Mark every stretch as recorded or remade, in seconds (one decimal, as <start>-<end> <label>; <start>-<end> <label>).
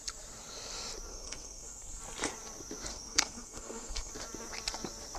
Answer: 0.0-1.1 recorded; 1.1-2.0 remade; 2.0-2.9 recorded; 2.9-4.1 remade; 4.1-5.2 recorded